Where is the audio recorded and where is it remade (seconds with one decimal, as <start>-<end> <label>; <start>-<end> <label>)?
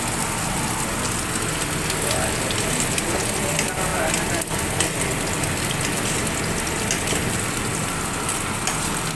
0.0-9.1 recorded